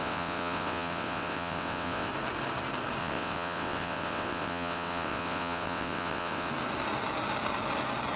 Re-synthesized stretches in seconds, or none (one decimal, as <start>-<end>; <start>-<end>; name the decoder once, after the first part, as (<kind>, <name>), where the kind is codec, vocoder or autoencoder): 0.0-2.1 (vocoder, WaveNeXt); 3.0-6.5